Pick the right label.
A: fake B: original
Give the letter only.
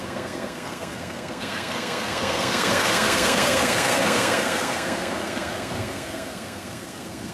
A